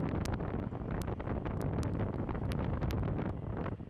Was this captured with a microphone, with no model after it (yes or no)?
yes